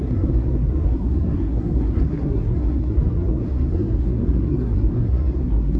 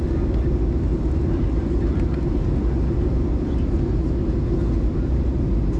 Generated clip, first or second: first